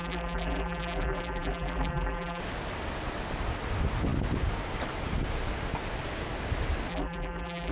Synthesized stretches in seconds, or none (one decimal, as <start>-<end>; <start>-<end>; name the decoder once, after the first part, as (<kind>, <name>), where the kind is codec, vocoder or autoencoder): 0.0-2.4 (vocoder, BigVGAN v2); 6.9-7.7